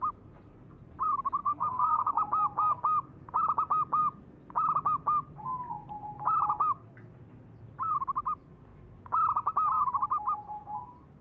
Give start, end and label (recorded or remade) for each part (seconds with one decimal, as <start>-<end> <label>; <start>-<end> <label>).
0.0-1.4 recorded; 1.4-2.2 remade; 2.2-11.2 recorded